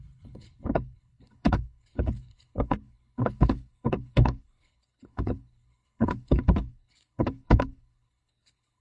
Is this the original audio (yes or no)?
no